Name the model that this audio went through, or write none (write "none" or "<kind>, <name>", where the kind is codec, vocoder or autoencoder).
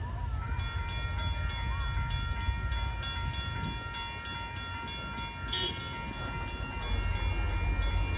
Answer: none